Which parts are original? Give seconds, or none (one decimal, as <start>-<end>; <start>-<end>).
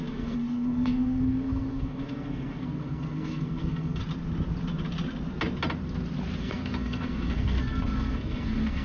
4.0-6.4